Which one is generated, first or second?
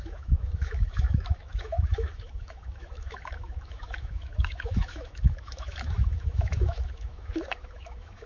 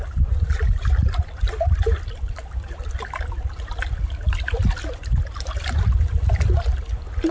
first